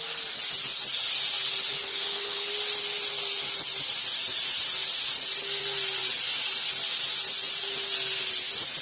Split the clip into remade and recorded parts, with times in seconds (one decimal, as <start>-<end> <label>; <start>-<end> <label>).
0.0-1.7 recorded; 1.7-2.5 remade; 2.5-8.8 recorded